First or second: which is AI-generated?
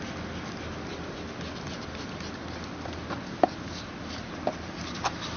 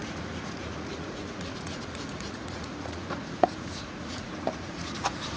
second